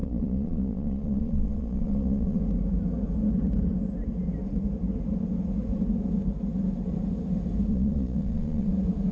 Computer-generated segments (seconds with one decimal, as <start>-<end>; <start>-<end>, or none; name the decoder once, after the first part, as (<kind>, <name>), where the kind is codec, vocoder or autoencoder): 0.0-2.4 (vocoder, Vocos); 7.7-8.7